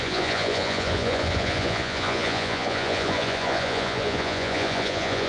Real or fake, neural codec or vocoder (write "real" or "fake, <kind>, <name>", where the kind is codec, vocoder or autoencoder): fake, vocoder, Vocos